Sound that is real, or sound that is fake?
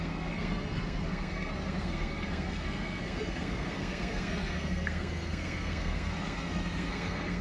fake